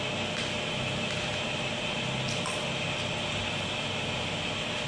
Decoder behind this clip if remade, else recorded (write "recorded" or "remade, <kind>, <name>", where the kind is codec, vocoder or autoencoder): recorded